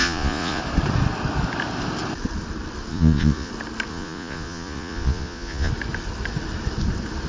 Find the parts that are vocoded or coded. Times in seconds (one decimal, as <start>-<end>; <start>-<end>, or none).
0.0-0.6; 2.9-3.5; 3.9-5.7